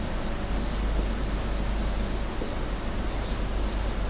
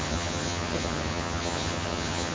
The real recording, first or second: first